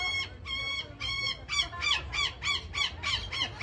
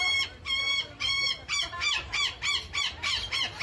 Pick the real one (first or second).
first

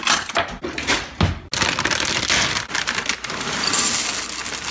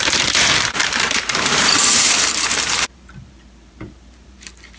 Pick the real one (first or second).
first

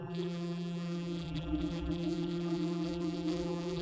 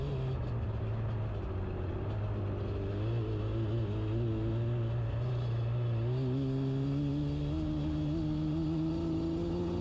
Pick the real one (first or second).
second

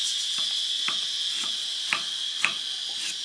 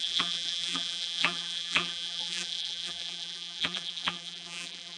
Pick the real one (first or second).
first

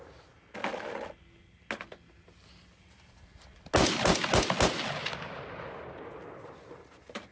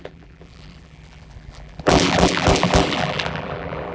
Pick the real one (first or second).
first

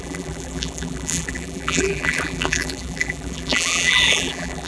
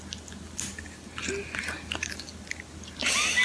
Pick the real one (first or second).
second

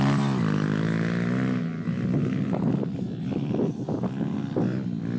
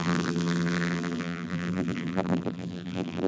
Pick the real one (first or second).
first